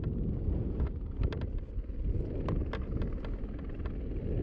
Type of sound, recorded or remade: recorded